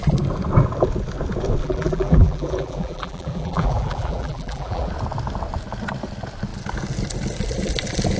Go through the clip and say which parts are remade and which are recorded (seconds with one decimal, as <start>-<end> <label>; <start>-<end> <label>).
0.0-1.6 recorded; 1.6-4.9 remade; 4.9-8.2 recorded